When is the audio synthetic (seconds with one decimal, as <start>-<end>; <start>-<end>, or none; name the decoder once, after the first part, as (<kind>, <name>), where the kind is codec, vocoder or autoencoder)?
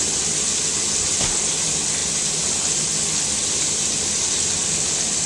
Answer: none